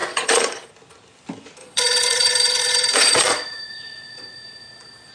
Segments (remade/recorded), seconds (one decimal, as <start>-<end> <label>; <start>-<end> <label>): 0.0-0.7 remade; 0.7-1.6 recorded; 1.6-5.1 remade

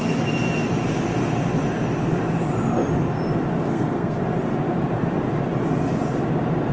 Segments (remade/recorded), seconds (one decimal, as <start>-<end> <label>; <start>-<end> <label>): 0.0-3.7 recorded; 3.7-4.2 remade; 4.2-6.7 recorded

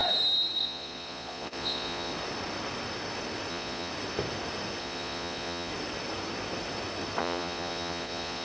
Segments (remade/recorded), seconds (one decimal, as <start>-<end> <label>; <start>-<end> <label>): 0.0-0.6 recorded; 0.6-2.1 remade; 2.1-3.5 recorded; 3.5-3.9 remade; 3.9-4.8 recorded; 4.8-5.7 remade; 5.7-7.2 recorded; 7.2-8.4 remade

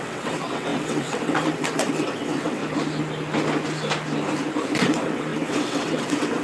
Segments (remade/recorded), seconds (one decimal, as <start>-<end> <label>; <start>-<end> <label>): 0.0-2.6 remade; 2.6-4.8 recorded; 4.8-6.4 remade